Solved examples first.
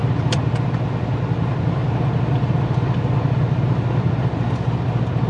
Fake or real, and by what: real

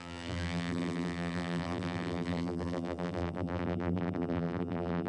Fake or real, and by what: fake, vocoder, BigVGAN v2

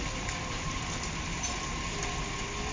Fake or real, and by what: real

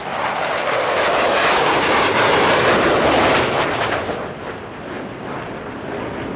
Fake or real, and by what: real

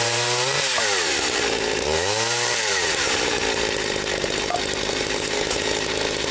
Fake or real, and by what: fake, vocoder, BigVGAN v2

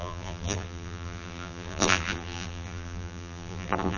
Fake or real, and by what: fake, vocoder, BigVGAN v2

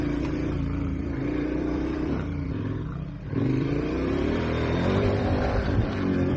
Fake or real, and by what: fake, vocoder, BigVGAN v2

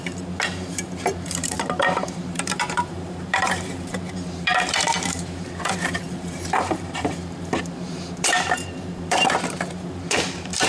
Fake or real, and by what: fake, vocoder, BigVGAN v2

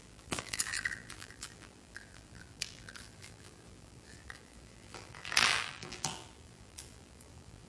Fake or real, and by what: fake, vocoder, BigVGAN v2